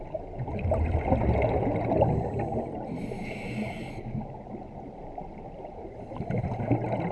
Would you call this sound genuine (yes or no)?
yes